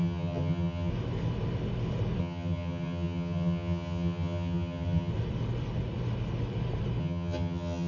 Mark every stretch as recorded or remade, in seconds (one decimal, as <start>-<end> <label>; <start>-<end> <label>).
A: 0.0-0.9 remade; 0.9-2.2 recorded; 2.2-5.1 remade; 5.1-7.0 recorded; 7.0-7.9 remade